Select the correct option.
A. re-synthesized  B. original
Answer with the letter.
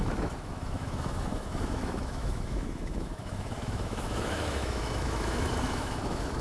A